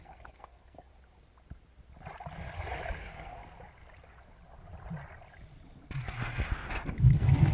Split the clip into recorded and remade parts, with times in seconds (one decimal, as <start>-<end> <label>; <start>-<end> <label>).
0.0-0.9 remade; 0.9-3.0 recorded; 3.0-3.4 remade; 3.4-7.0 recorded; 7.0-7.5 remade